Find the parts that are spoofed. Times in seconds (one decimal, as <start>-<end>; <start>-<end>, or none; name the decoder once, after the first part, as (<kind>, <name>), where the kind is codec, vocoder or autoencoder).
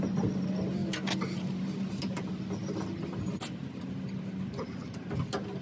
none